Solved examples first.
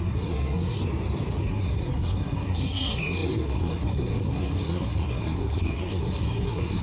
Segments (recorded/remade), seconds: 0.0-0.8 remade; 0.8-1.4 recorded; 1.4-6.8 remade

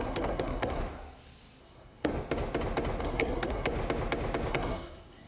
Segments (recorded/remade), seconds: 0.0-0.8 remade; 0.8-1.6 recorded; 1.6-2.1 remade; 2.1-3.0 recorded; 3.0-3.7 remade; 3.7-4.5 recorded; 4.5-5.3 remade

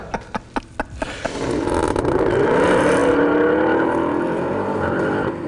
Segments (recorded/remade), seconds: 0.0-5.5 recorded

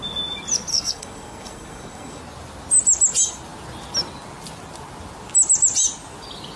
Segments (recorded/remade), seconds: 0.0-0.7 recorded; 0.7-2.2 remade; 2.2-6.6 recorded

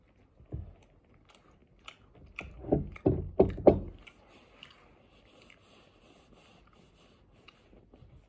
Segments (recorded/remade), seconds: 0.0-8.3 recorded

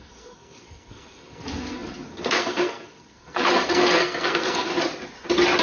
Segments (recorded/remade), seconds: 0.0-4.7 remade; 4.7-5.6 recorded

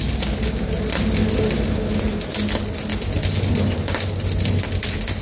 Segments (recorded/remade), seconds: 0.0-5.2 recorded